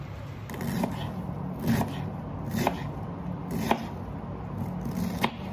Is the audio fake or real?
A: real